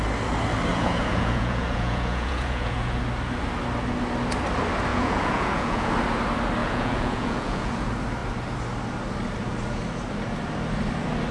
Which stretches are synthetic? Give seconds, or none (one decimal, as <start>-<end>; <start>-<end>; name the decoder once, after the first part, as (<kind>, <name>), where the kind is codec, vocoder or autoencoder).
0.7-3.0 (vocoder, Vocos); 4.9-5.9; 6.6-7.7